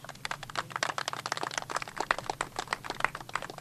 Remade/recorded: recorded